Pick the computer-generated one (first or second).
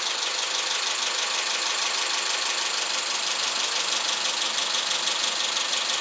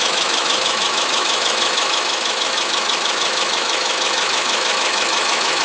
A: second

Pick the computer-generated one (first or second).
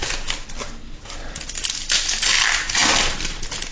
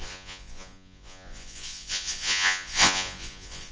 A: second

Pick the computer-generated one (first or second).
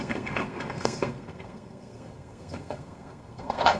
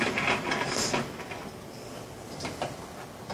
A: first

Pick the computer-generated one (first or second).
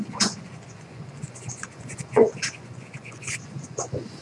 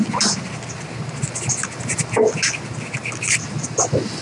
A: first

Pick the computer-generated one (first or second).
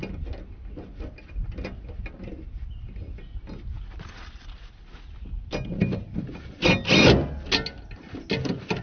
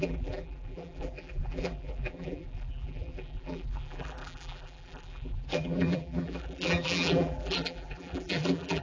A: second